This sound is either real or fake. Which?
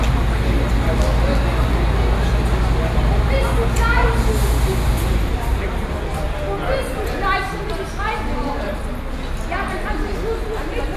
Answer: real